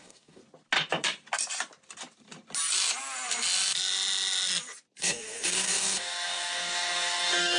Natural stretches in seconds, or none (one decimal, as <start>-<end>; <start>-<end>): 0.4-5.0

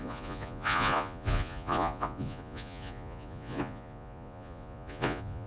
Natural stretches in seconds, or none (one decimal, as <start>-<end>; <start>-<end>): none